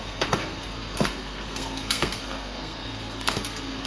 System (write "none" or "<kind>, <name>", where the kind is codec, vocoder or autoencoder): codec, SNAC